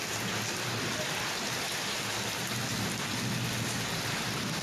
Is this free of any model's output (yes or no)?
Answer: yes